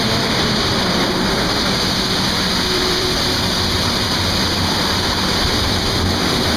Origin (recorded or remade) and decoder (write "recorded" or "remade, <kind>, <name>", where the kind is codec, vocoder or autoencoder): remade, vocoder, BigVGAN v2